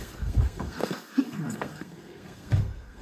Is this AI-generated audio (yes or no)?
yes